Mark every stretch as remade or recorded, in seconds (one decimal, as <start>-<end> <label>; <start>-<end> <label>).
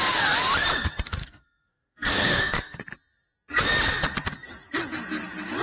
0.0-1.2 recorded; 1.2-2.8 remade; 2.8-5.6 recorded